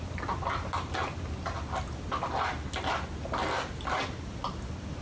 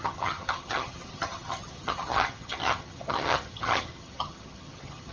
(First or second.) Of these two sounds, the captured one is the first